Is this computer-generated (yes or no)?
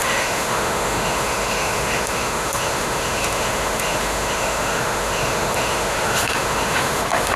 yes